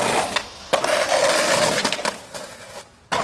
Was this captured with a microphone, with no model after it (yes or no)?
yes